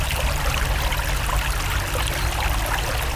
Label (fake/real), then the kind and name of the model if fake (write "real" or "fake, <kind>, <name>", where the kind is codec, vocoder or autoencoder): real